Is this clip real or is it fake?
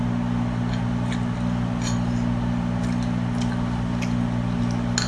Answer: real